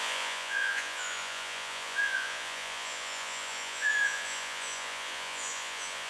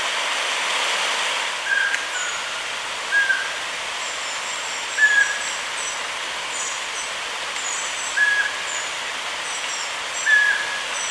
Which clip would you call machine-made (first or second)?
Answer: first